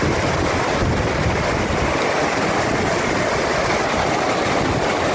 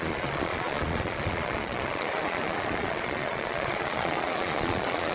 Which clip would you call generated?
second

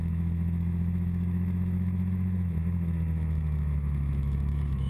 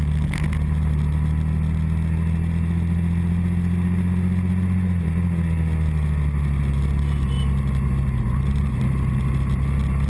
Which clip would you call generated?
first